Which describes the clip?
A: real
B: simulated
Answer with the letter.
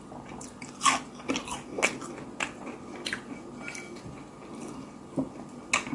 A